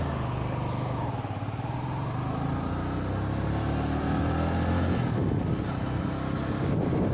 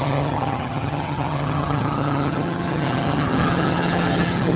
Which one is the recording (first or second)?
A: first